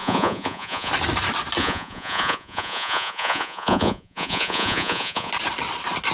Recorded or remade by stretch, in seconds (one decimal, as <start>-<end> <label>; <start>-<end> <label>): 0.0-0.9 remade; 0.9-1.6 recorded; 1.6-5.3 remade; 5.3-6.1 recorded